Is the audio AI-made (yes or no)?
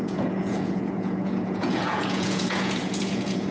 yes